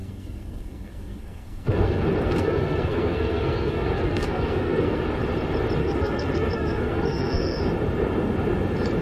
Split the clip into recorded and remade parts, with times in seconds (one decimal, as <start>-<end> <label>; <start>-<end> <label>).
0.0-5.0 remade; 5.0-5.8 recorded; 5.8-7.6 remade; 7.6-9.0 recorded